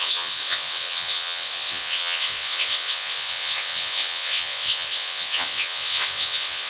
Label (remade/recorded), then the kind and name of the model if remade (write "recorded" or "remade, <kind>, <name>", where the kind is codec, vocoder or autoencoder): remade, vocoder, WaveNeXt